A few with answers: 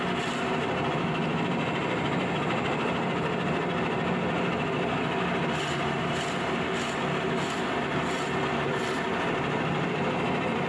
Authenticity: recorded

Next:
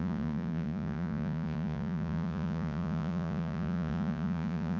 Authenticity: remade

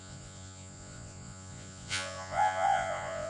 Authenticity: remade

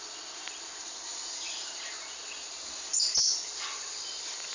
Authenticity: recorded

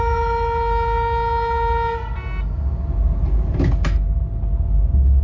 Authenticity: recorded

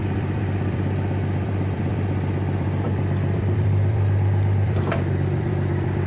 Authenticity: remade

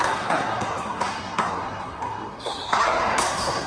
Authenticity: remade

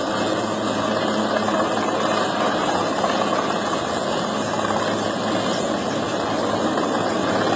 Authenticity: recorded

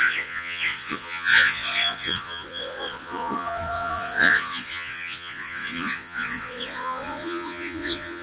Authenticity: remade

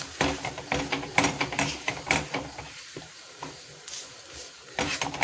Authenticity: remade